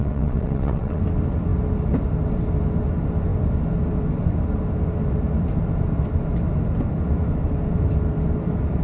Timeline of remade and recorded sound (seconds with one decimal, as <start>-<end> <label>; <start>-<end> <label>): 0.0-1.0 remade; 1.0-8.8 recorded